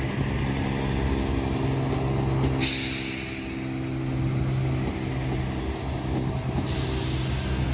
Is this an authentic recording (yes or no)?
yes